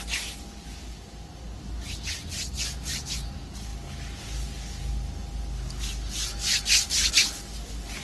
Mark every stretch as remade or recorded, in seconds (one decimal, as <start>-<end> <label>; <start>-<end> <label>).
0.0-8.0 recorded